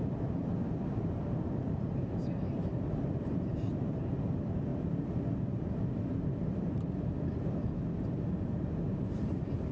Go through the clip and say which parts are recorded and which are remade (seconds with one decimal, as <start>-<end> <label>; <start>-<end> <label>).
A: 0.0-4.7 remade; 4.7-6.2 recorded; 6.2-9.7 remade